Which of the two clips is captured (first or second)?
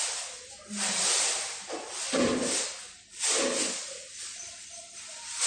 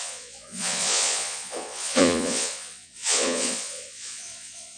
first